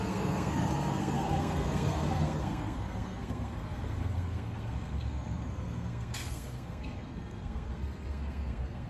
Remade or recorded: remade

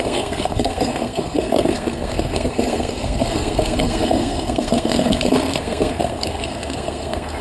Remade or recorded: remade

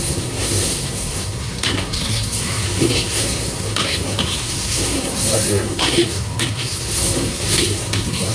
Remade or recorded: remade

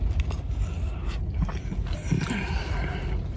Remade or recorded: recorded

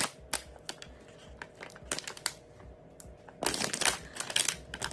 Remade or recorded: recorded